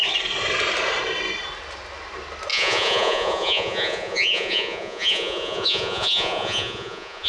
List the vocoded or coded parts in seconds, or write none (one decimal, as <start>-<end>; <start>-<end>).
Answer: 2.5-7.3